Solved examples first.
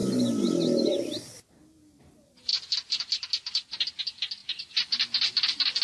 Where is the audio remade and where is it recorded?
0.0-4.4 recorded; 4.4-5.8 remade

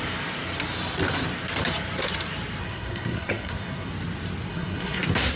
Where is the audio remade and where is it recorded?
0.0-2.6 recorded; 2.6-3.9 remade; 3.9-4.5 recorded; 4.5-5.0 remade; 5.0-5.4 recorded

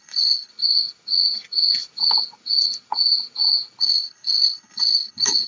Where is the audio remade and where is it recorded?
0.0-0.5 remade; 0.5-3.8 recorded; 3.8-5.5 remade